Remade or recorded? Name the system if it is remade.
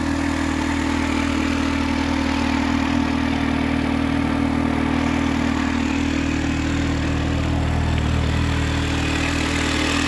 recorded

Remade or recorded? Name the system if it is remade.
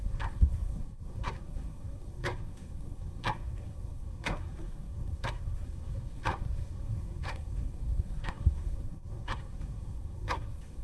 remade, codec, SNAC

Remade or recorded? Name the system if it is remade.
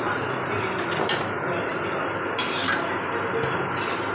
recorded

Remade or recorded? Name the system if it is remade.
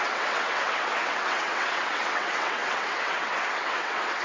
remade, vocoder, WaveNeXt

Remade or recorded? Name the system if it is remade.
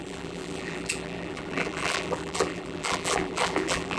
remade, vocoder, BigVGAN v2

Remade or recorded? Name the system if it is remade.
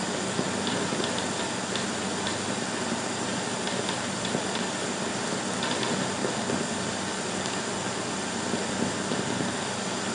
recorded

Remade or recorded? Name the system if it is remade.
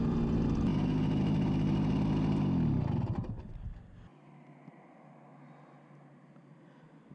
recorded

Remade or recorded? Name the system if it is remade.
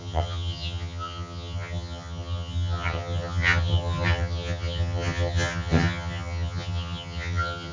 remade, vocoder, HiFi-GAN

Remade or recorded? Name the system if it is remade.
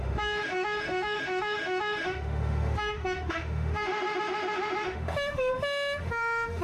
remade, autoencoder, DAC-VAE